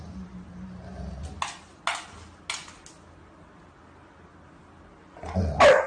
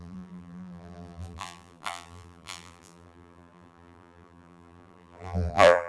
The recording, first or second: first